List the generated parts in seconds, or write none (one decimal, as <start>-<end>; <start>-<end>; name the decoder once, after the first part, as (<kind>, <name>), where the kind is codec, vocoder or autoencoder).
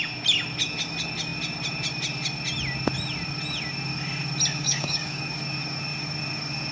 4.6-5.2 (codec, DAC)